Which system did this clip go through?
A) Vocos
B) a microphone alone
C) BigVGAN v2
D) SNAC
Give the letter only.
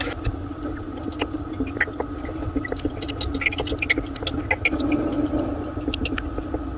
B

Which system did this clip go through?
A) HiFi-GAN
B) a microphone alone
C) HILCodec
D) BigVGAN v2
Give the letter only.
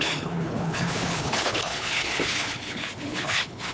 C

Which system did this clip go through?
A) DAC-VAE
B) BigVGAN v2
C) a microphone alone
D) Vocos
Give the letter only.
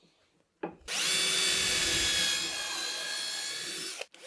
C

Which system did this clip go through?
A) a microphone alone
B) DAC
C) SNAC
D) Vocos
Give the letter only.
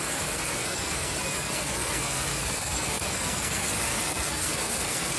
C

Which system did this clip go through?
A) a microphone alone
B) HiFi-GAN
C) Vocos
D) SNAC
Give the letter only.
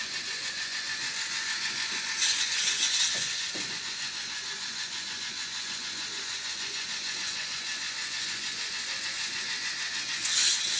C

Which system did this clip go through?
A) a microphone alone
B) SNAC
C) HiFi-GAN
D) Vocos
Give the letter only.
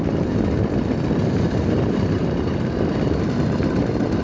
A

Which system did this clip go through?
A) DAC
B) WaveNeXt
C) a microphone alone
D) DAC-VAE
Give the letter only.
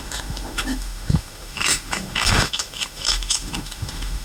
D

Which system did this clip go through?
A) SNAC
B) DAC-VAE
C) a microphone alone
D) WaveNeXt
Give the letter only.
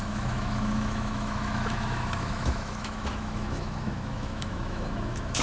B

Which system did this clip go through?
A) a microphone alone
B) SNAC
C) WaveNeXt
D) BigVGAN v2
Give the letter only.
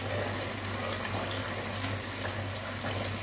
A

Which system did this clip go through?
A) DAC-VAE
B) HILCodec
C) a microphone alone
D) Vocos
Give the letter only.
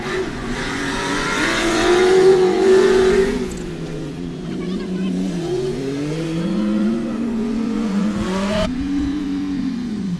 D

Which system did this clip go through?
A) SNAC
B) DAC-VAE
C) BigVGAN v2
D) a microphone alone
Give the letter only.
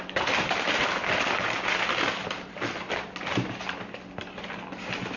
D